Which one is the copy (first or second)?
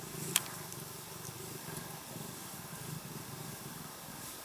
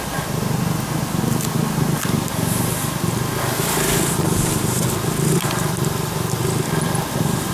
first